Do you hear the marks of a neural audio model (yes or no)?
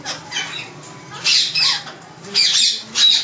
no